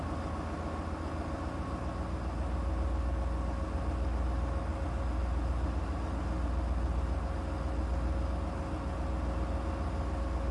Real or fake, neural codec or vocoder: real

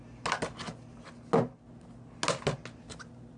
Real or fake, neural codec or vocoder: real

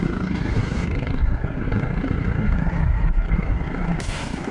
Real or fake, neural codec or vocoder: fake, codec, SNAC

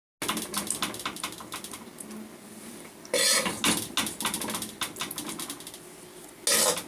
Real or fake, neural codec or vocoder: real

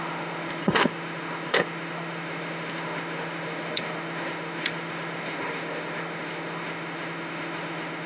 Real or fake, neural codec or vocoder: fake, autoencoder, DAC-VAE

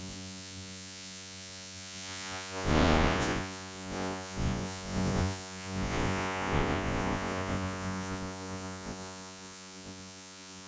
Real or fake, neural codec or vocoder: fake, vocoder, Vocos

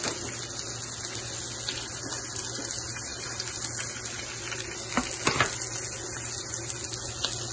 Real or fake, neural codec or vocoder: real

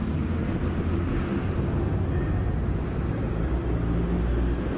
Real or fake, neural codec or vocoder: real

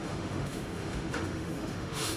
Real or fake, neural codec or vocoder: fake, autoencoder, DAC-VAE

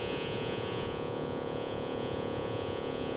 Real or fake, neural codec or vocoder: fake, vocoder, Vocos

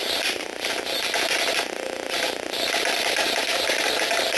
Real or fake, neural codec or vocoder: real